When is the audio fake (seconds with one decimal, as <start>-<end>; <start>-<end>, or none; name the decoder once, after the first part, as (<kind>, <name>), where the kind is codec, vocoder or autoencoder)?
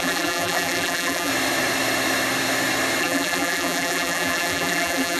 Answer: 0.0-1.3 (vocoder, BigVGAN v2); 3.0-5.2